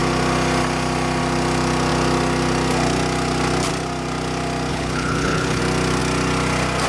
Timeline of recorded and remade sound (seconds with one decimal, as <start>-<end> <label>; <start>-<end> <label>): 0.0-4.7 recorded; 4.7-5.6 remade; 5.6-6.9 recorded